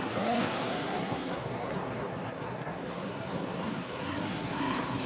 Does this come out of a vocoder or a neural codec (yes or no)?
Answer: yes